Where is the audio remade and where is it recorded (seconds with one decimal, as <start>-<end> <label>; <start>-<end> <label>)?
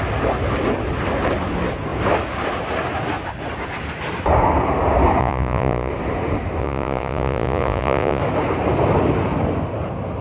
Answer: 0.0-5.2 recorded; 5.2-5.9 remade; 5.9-6.6 recorded; 6.6-8.2 remade; 8.2-10.2 recorded